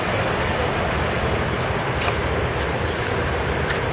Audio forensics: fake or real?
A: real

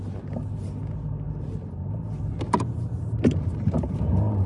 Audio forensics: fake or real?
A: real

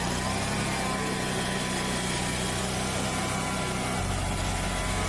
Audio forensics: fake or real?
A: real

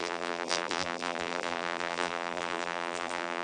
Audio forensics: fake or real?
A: fake